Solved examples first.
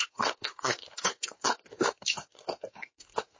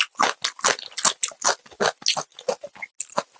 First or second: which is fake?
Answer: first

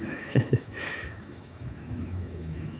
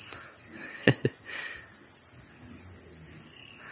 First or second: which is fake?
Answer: first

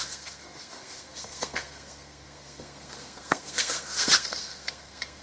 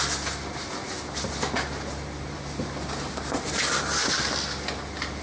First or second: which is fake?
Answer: first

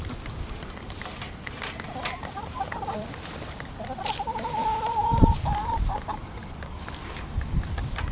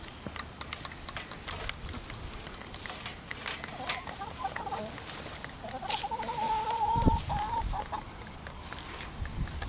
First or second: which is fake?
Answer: first